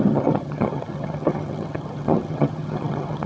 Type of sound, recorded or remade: remade